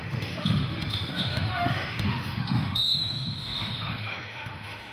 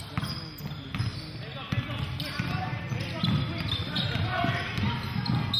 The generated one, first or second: first